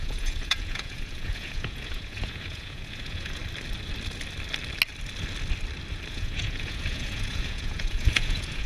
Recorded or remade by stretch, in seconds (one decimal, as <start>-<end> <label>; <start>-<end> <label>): 0.0-3.4 remade; 3.4-6.1 recorded; 6.1-8.7 remade